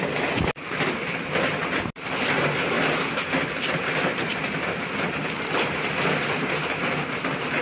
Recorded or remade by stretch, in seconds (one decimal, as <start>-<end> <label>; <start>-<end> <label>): 0.0-4.3 recorded; 4.3-5.9 remade; 5.9-7.6 recorded